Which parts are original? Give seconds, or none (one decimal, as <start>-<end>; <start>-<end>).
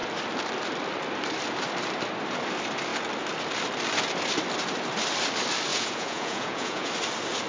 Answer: 0.0-5.7; 6.9-7.5